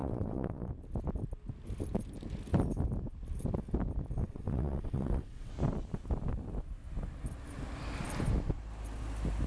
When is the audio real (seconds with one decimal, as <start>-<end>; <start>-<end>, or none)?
0.7-4.2; 5.5-9.5